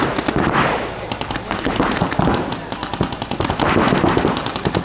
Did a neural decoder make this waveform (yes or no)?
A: no